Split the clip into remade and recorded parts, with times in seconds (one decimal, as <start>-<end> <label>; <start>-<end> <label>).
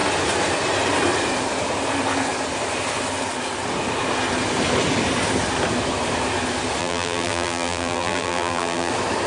0.0-6.8 recorded; 6.8-8.9 remade; 8.9-9.3 recorded